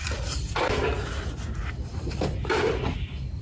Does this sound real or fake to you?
real